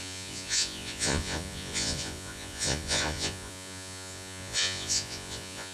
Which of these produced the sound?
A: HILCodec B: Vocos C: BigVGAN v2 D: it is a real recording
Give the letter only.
B